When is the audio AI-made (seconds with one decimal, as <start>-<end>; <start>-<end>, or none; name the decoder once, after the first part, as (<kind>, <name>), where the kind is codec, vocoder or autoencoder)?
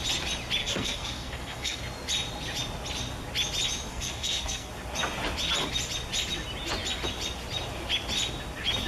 0.6-1.8 (codec, SNAC); 3.9-4.7